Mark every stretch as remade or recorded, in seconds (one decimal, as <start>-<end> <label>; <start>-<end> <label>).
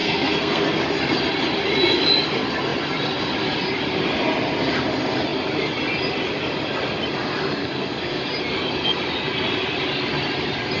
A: 0.0-0.8 remade; 0.8-7.6 recorded; 7.6-8.2 remade; 8.2-10.8 recorded